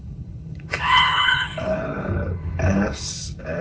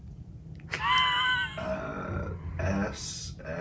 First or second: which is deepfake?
first